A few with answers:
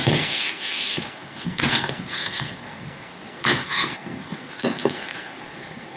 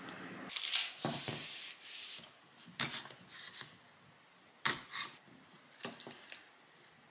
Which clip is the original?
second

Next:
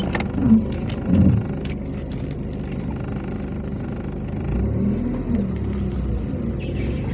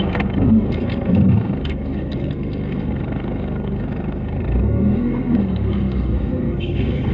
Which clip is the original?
first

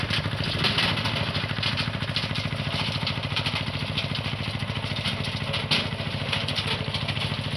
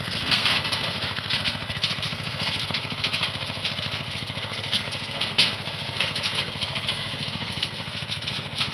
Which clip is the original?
first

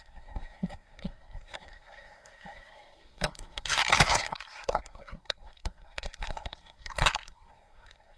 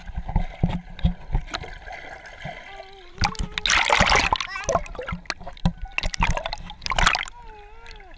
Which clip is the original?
second